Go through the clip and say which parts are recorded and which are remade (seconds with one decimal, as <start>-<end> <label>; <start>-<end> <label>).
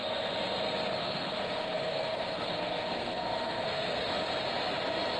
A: 0.0-1.0 recorded; 1.0-4.1 remade; 4.1-5.2 recorded